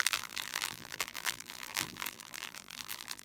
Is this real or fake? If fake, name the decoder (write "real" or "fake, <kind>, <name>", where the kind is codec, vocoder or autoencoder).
fake, vocoder, BigVGAN v2